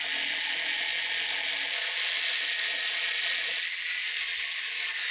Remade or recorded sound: recorded